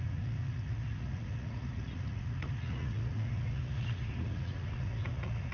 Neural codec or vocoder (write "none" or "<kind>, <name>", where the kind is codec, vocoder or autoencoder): vocoder, Vocos